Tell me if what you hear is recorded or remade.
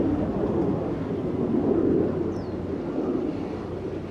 recorded